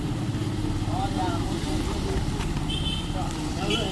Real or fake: real